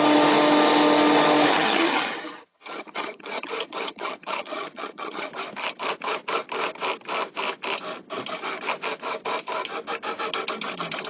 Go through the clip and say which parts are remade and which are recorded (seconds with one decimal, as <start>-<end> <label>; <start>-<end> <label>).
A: 0.0-1.5 recorded; 1.5-5.3 remade; 5.3-11.1 recorded